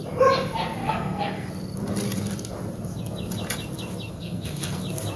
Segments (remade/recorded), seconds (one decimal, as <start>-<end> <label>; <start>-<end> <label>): 0.0-0.8 recorded; 0.8-1.5 remade; 1.5-4.1 recorded; 4.1-4.8 remade; 4.8-5.2 recorded